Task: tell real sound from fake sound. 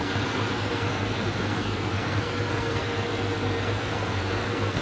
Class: fake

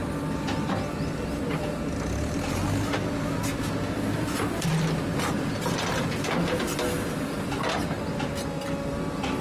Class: real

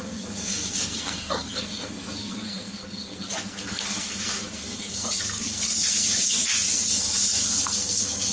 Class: fake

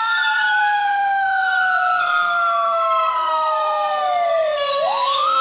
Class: fake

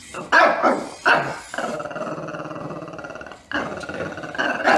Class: real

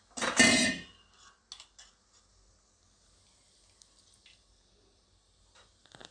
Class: real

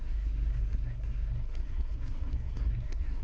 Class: fake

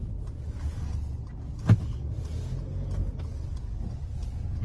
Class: real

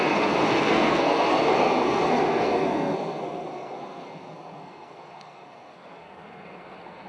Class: fake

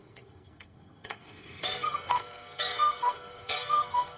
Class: fake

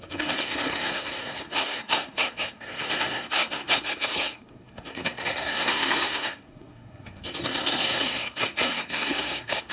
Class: fake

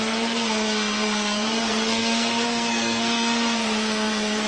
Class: fake